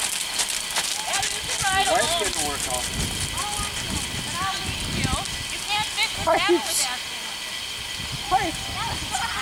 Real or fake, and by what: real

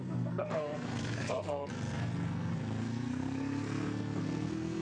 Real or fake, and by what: fake, codec, SNAC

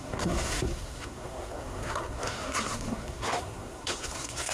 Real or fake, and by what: fake, codec, SNAC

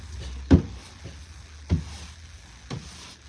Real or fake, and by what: real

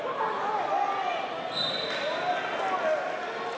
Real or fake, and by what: real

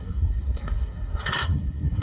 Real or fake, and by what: fake, codec, SNAC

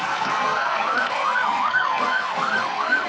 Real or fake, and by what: fake, codec, SNAC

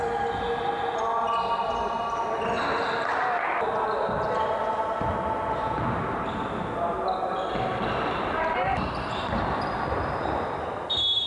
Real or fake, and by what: real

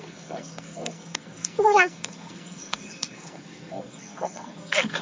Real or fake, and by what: fake, codec, SNAC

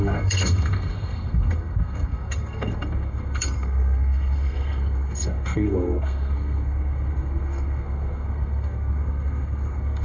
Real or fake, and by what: fake, codec, SNAC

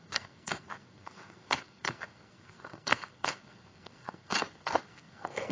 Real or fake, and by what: fake, codec, SNAC